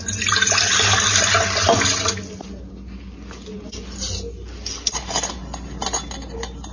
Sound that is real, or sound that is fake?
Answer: real